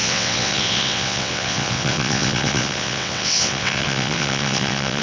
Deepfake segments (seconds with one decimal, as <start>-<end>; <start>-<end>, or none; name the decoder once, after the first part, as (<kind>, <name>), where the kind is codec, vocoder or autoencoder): 0.0-5.0 (vocoder, WaveNeXt)